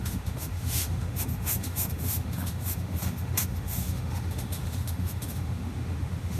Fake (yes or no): yes